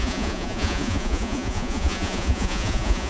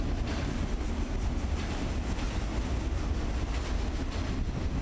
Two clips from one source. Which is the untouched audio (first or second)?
second